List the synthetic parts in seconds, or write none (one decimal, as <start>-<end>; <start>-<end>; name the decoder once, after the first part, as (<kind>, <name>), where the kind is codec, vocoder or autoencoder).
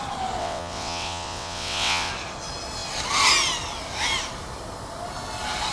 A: 0.4-2.1 (vocoder, WaveNeXt)